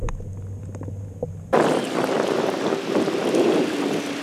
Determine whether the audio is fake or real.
real